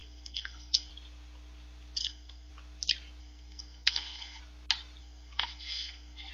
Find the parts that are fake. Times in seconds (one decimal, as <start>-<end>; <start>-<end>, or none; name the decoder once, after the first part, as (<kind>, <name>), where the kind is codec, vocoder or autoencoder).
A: 0.0-0.9 (codec, SNAC); 2.0-2.5; 3.2-4.4; 5.0-6.3